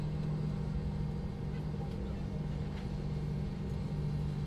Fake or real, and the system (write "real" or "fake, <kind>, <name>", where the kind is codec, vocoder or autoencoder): real